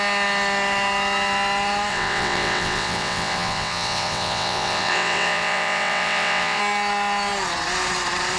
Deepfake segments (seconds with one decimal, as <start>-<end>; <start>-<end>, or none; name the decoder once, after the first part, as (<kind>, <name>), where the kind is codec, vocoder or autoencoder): 1.9-6.6 (vocoder, WaveNeXt)